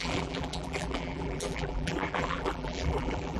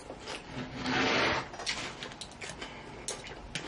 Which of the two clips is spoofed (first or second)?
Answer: first